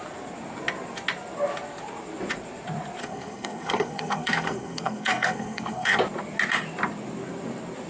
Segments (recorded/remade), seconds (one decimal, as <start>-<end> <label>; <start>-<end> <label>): 0.0-3.0 recorded; 3.0-6.0 remade; 6.0-7.9 recorded